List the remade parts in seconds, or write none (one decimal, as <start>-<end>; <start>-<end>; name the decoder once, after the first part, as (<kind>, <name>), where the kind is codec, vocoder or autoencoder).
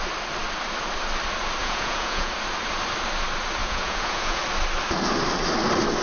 1.6-2.3 (vocoder, Vocos); 3.6-4.4